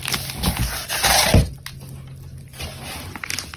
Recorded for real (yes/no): yes